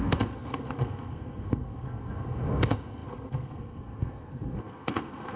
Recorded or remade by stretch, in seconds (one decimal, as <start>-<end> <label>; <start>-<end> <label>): 0.0-5.4 remade